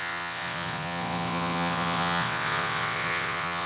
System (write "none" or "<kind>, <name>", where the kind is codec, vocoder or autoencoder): vocoder, WaveNeXt